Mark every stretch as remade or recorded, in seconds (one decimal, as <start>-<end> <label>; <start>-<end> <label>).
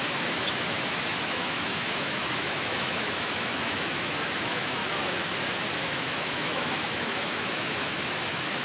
0.0-4.8 remade; 4.8-5.8 recorded; 5.8-8.6 remade